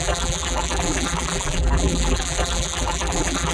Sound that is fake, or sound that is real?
fake